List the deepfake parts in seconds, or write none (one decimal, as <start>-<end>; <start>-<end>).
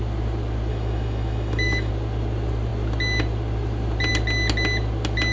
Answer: 0.7-1.9